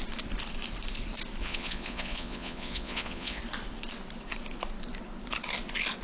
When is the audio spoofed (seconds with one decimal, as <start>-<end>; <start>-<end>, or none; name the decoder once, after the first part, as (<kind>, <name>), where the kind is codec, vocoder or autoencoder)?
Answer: 1.4-3.4 (vocoder, Vocos)